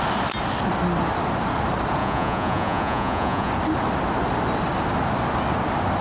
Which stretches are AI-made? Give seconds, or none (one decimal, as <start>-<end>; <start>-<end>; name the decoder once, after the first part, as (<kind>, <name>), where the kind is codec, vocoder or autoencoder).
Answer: 2.0-3.5 (vocoder, Vocos)